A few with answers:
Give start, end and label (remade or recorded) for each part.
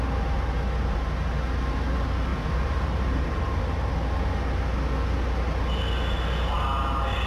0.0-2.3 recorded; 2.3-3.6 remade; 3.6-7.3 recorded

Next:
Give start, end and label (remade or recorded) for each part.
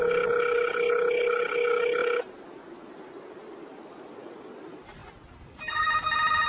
0.0-5.0 recorded; 5.0-6.5 remade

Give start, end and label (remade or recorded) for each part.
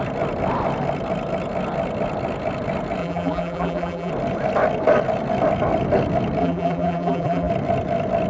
0.0-3.0 recorded; 3.0-4.1 remade; 4.1-6.4 recorded; 6.4-7.5 remade; 7.5-8.3 recorded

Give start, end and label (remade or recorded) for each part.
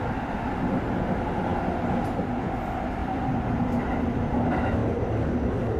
0.0-3.0 recorded; 3.0-3.9 remade; 3.9-5.8 recorded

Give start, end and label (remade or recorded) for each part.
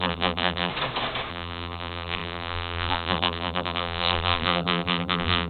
0.0-0.7 remade; 0.7-1.3 recorded; 1.3-5.5 remade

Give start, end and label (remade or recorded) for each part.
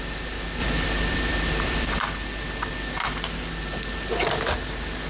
0.0-0.6 recorded; 0.6-2.0 remade; 2.0-5.1 recorded